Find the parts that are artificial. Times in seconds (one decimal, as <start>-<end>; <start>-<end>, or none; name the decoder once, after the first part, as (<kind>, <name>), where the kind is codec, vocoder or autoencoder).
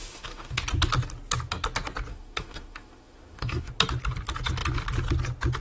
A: 0.0-0.6 (autoencoder, DAC-VAE); 2.1-3.7